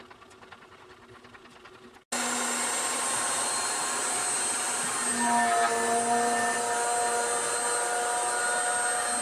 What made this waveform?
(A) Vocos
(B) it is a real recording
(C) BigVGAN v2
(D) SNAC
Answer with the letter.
B